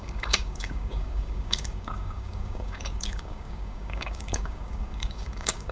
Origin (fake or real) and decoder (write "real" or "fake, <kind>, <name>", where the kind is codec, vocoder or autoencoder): fake, codec, DAC